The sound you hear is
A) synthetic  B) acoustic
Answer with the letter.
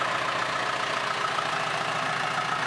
B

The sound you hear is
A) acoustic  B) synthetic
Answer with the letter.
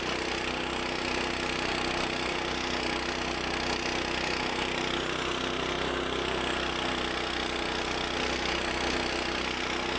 A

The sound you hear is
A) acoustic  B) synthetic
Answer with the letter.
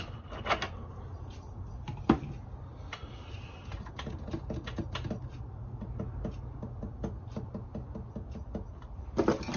A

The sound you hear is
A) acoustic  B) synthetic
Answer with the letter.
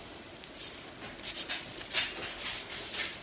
A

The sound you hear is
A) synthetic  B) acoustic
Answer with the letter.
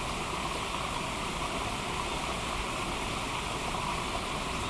B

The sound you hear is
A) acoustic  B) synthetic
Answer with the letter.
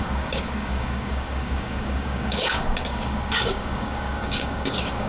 B